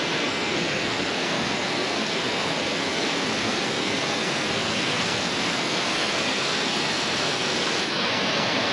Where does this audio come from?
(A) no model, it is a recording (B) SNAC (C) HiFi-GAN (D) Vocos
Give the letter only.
B